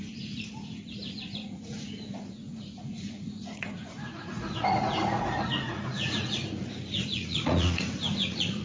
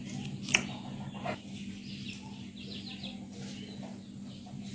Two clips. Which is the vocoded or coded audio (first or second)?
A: first